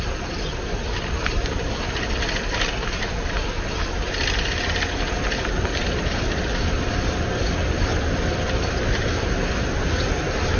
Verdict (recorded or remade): recorded